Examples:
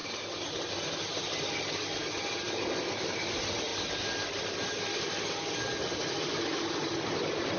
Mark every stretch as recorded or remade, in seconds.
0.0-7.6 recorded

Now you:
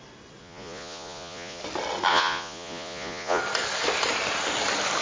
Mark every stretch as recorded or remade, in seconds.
0.0-0.4 recorded; 0.4-1.6 remade; 1.6-2.1 recorded; 2.1-3.4 remade; 3.4-5.0 recorded

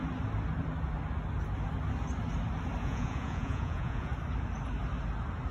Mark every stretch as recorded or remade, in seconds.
0.0-2.8 recorded; 2.8-4.1 remade; 4.1-5.5 recorded